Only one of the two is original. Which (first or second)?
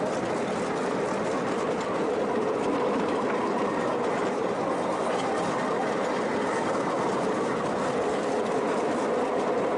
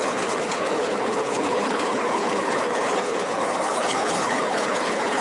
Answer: first